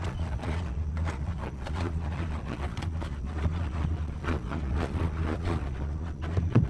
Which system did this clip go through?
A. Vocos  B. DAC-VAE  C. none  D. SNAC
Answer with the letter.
A